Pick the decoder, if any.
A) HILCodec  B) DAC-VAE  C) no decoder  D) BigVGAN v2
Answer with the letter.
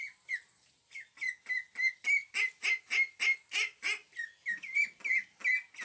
C